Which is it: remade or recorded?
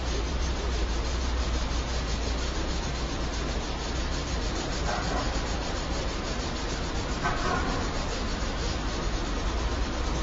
remade